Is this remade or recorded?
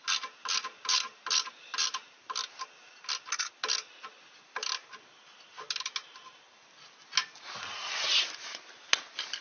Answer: recorded